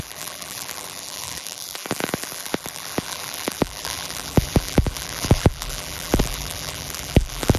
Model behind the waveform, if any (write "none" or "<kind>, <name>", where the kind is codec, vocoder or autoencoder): vocoder, BigVGAN v2